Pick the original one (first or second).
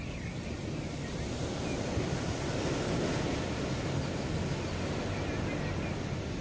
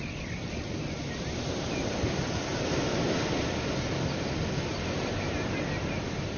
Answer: first